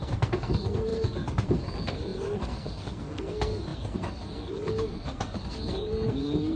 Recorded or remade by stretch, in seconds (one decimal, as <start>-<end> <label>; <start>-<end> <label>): 0.0-6.6 remade